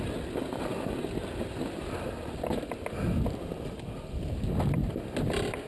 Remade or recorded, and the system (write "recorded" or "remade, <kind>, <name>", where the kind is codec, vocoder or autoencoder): recorded